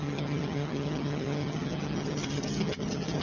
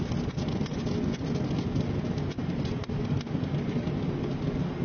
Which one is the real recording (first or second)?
second